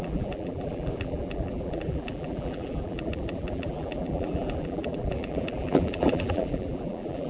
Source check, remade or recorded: remade